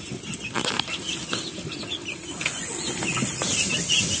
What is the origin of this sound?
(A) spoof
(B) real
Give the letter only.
B